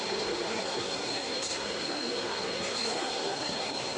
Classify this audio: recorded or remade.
remade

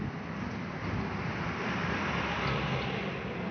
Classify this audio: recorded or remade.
recorded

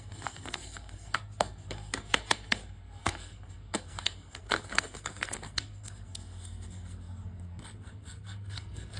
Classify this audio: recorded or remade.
remade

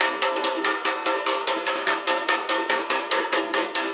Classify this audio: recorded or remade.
remade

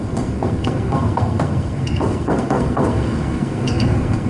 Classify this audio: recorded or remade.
remade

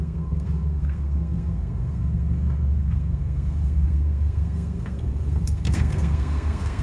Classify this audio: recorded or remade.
remade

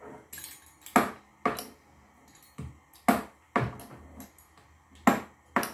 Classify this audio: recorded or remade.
recorded